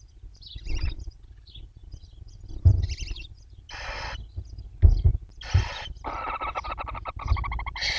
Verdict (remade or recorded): recorded